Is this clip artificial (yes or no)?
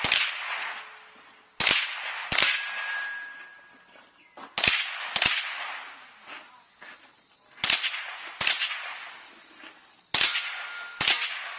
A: no